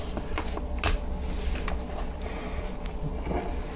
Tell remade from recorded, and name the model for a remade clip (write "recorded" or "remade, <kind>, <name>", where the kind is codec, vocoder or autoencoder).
recorded